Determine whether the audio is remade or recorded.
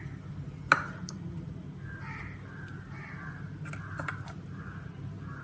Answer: recorded